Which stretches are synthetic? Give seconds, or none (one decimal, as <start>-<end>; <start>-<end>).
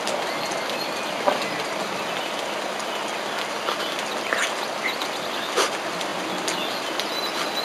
none